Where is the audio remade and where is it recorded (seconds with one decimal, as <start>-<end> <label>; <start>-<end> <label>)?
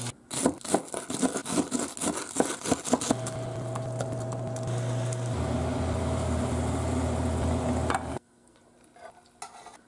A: 0.0-8.1 recorded; 8.1-8.6 remade; 8.6-9.9 recorded